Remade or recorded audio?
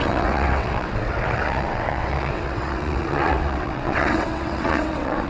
remade